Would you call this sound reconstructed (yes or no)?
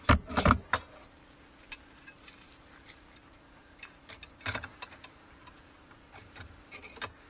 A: no